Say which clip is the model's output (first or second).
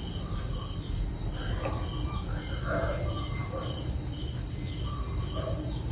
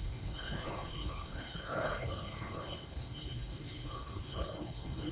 second